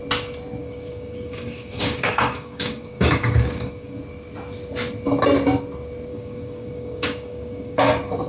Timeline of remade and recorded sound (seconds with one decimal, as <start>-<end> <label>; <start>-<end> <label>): 0.0-0.6 recorded; 0.6-4.0 remade; 4.0-6.1 recorded; 6.1-7.9 remade; 7.9-8.3 recorded